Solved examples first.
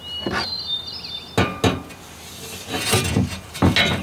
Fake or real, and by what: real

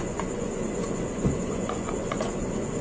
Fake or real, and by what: fake, vocoder, Vocos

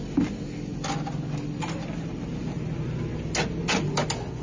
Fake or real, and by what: real